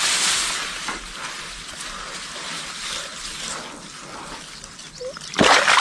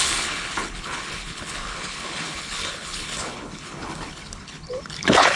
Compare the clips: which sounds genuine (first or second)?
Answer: first